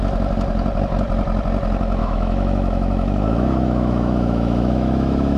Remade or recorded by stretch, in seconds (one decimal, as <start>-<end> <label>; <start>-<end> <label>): 0.0-2.0 recorded; 2.0-5.4 remade